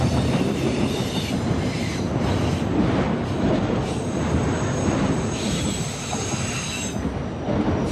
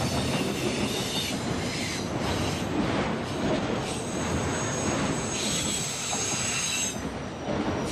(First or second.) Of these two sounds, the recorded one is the second